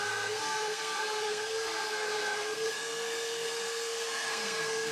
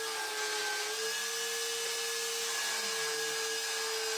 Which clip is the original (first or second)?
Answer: second